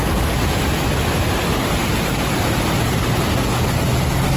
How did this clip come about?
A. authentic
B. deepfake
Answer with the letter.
A